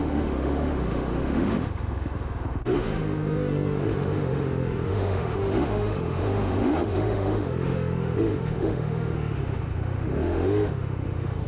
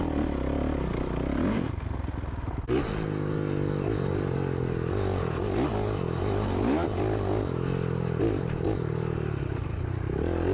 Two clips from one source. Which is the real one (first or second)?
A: second